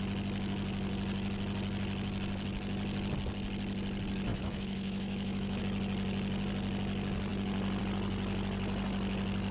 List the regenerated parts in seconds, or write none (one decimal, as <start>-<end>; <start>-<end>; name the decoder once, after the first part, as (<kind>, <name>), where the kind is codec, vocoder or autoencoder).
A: 4.3-5.6 (autoencoder, DAC-VAE)